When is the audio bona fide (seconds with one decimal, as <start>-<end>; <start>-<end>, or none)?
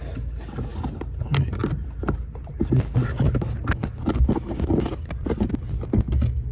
0.0-6.5